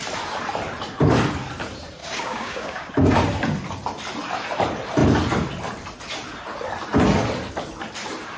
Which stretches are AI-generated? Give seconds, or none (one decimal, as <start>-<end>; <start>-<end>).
2.0-2.9